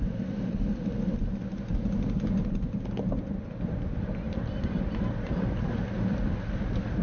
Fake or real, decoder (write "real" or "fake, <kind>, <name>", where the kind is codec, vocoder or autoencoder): real